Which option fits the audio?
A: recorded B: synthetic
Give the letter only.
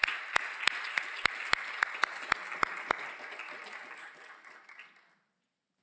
A